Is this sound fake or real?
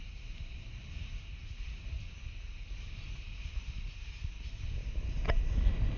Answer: real